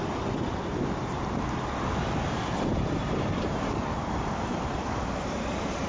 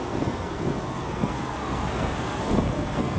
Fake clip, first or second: second